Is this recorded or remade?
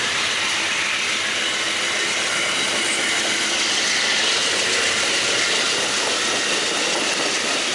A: recorded